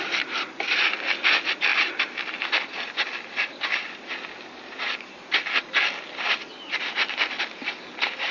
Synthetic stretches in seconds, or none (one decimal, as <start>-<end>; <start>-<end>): none